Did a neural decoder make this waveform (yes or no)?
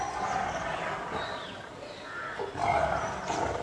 no